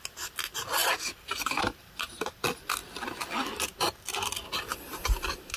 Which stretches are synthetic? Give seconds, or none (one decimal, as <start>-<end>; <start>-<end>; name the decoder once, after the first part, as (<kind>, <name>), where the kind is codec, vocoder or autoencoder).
0.8-2.4 (vocoder, BigVGAN v2)